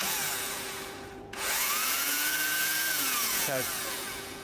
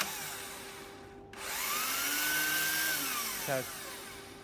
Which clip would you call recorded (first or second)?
second